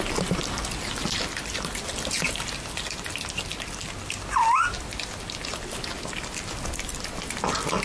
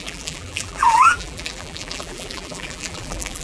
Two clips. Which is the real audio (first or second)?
first